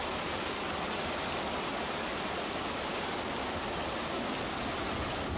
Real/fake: real